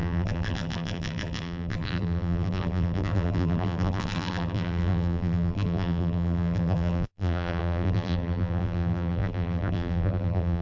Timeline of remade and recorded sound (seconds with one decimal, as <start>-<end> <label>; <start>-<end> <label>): 0.0-10.6 remade

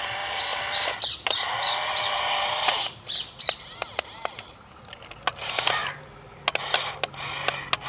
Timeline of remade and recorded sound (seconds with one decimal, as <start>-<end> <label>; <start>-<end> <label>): 0.0-0.5 recorded; 0.5-4.8 remade; 4.8-7.9 recorded